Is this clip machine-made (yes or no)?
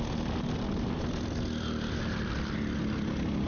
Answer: no